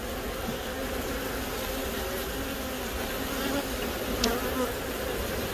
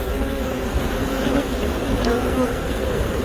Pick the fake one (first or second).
second